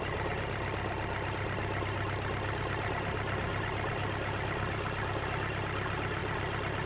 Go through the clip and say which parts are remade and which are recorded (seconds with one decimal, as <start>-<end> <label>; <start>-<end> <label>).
0.0-6.9 recorded